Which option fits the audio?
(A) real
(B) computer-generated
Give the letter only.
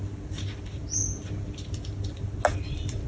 A